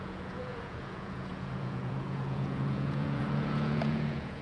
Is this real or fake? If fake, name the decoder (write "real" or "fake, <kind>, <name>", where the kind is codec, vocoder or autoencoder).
fake, vocoder, Vocos